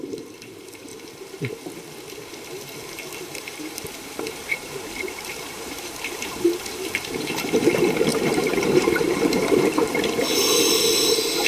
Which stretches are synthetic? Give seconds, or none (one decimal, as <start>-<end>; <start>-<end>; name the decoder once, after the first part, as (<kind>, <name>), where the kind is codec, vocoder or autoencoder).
0.0-0.9 (vocoder, BigVGAN v2); 3.2-9.7